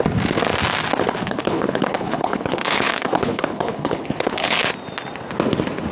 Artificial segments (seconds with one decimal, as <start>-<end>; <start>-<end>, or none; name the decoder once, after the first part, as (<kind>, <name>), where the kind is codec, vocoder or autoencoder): 1.2-4.7 (codec, HILCodec)